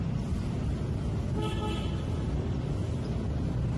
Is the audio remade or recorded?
recorded